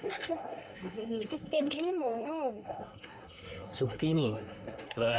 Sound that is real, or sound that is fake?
fake